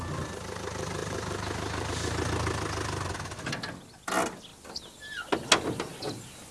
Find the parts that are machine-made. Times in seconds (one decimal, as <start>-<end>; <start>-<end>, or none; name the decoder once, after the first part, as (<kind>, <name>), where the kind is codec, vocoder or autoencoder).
none